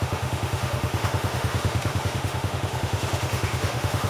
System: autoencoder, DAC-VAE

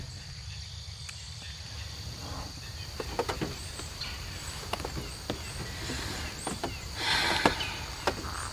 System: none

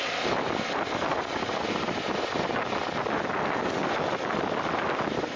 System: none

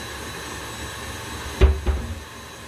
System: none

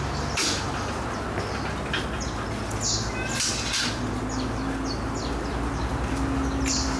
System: none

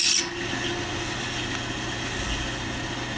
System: none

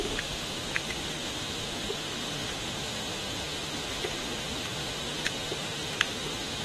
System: autoencoder, DAC-VAE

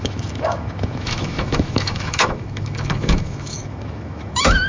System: autoencoder, DAC-VAE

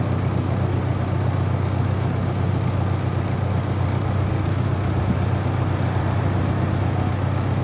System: none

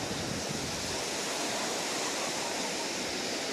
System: none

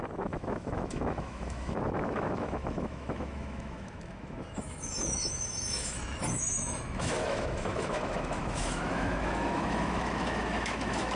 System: autoencoder, DAC-VAE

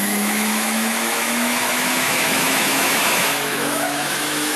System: autoencoder, DAC-VAE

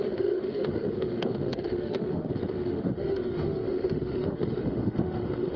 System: autoencoder, DAC-VAE